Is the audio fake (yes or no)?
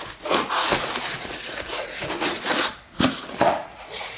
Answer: yes